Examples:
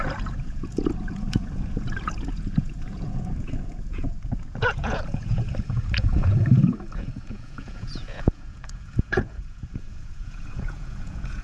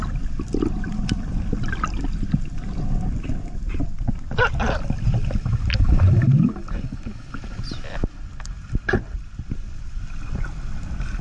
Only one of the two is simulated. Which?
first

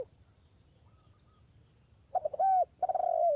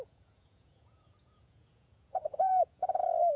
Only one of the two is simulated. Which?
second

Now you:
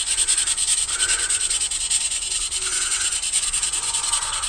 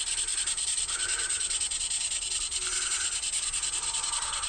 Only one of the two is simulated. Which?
first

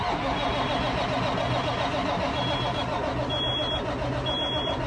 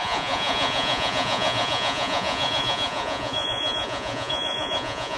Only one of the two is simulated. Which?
second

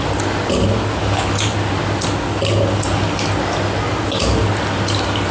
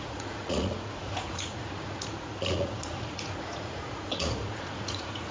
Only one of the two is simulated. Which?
second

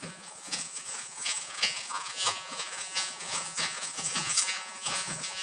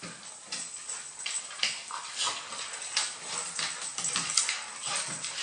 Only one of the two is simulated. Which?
first